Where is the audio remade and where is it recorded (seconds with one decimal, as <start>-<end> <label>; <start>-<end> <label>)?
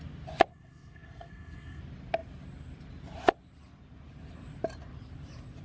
0.0-0.5 recorded; 0.5-1.8 remade; 1.8-5.6 recorded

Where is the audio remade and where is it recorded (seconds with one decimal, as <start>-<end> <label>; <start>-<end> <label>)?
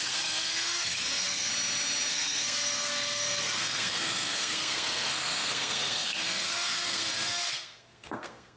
0.0-1.5 remade; 1.5-2.1 recorded; 2.1-8.6 remade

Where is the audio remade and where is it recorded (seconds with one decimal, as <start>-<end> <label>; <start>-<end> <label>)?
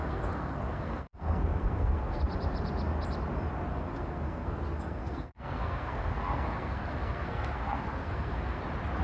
0.0-2.2 remade; 2.2-3.7 recorded; 3.7-8.6 remade; 8.6-9.0 recorded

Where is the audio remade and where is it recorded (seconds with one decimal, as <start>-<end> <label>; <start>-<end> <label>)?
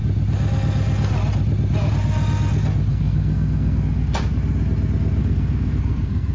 0.0-2.9 recorded; 2.9-4.2 remade; 4.2-5.2 recorded; 5.2-6.3 remade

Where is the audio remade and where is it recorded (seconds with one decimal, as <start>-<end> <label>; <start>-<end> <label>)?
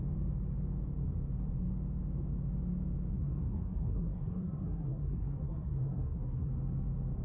0.0-3.1 recorded; 3.1-6.5 remade; 6.5-7.2 recorded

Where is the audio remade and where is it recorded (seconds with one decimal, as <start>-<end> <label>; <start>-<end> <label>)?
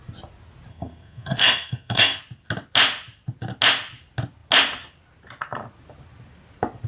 0.0-0.7 recorded; 0.7-2.2 remade; 2.2-6.9 recorded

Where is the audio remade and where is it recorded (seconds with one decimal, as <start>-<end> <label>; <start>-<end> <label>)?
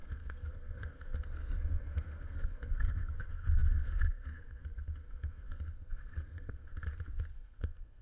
0.0-6.7 remade; 6.7-7.3 recorded; 7.3-8.0 remade